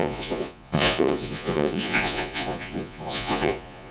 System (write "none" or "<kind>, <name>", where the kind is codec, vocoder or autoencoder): vocoder, Vocos